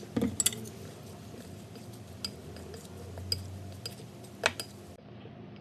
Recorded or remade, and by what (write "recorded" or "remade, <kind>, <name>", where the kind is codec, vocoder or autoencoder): recorded